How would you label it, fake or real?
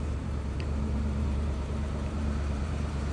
fake